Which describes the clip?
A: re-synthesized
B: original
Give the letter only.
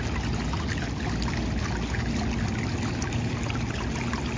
B